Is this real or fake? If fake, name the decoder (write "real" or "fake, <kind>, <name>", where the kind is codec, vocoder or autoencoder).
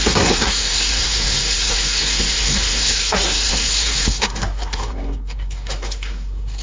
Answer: fake, codec, SNAC